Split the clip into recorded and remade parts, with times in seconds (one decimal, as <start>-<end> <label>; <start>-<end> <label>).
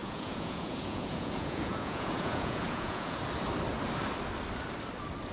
0.0-3.2 remade; 3.2-5.3 recorded